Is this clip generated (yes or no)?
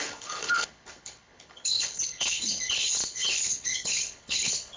yes